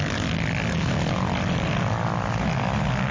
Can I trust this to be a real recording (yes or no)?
yes